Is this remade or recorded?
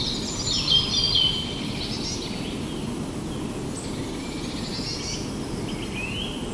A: recorded